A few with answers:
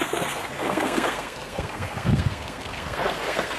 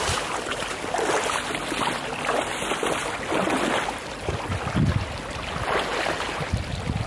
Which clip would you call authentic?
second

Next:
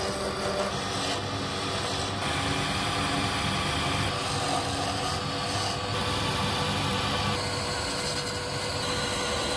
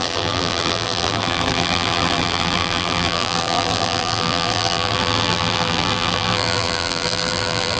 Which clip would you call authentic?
first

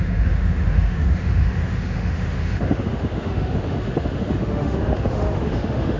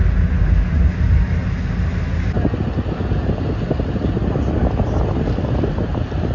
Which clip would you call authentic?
second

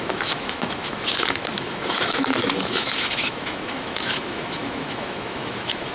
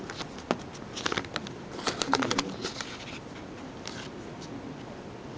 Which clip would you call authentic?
second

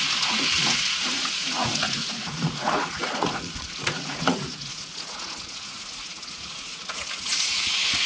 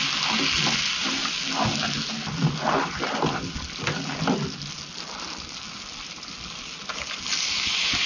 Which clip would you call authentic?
second